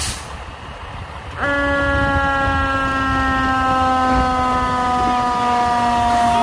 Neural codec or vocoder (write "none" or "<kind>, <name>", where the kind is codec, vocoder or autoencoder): none